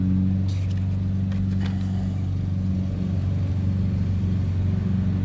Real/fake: real